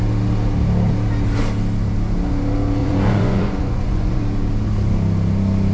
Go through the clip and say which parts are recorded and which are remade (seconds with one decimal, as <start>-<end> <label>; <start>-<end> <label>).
0.0-2.8 recorded; 2.8-4.2 remade; 4.2-5.7 recorded